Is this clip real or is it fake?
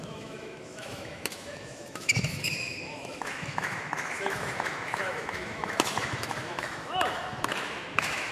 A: fake